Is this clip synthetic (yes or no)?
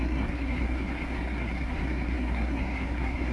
yes